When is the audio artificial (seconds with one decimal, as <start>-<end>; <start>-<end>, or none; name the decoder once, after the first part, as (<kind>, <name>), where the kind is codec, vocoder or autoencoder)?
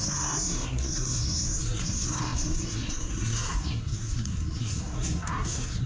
0.0-5.9 (codec, SNAC)